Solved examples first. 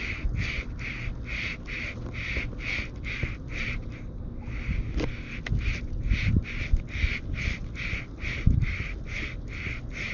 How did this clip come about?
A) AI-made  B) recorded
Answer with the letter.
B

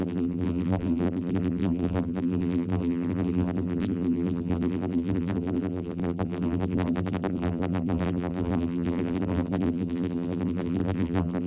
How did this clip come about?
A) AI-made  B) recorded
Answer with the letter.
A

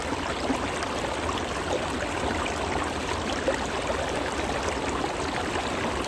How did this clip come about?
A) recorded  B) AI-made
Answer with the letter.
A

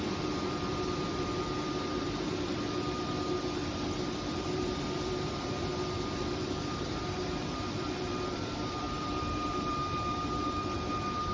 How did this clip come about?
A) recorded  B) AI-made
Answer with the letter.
B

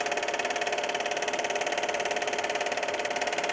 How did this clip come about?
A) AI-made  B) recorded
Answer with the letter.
B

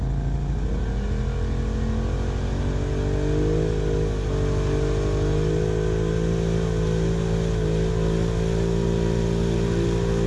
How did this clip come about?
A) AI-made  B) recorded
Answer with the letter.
B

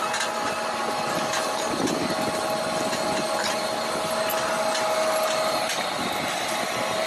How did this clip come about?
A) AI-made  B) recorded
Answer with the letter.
B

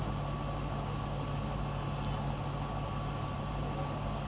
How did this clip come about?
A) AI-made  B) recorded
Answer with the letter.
B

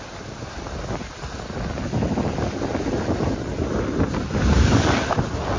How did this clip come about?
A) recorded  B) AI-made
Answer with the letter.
A